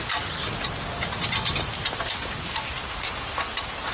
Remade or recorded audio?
recorded